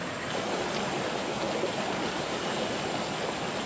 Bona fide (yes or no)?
yes